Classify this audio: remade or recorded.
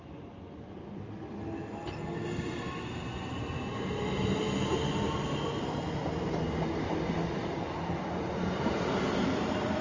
recorded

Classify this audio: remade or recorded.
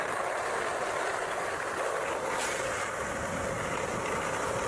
remade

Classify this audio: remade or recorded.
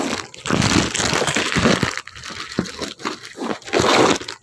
recorded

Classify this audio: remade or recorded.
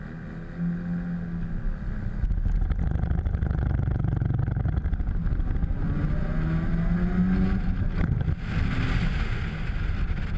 recorded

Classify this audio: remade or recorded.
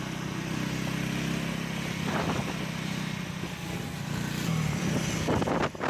recorded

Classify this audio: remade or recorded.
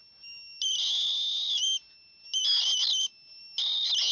recorded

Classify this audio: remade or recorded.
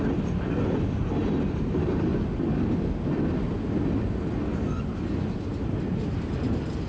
recorded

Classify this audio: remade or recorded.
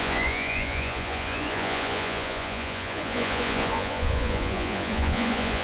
remade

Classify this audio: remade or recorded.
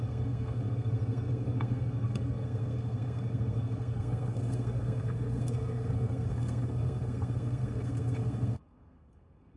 remade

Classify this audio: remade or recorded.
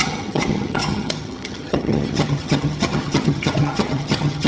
remade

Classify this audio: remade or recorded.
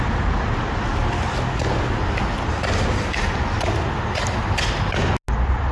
recorded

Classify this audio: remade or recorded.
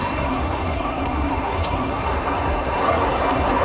remade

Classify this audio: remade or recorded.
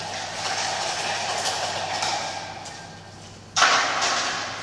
recorded